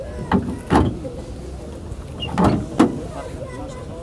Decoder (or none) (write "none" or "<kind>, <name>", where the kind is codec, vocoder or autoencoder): none